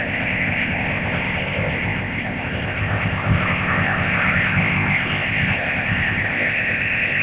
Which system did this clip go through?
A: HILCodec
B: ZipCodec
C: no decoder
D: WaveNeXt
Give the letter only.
B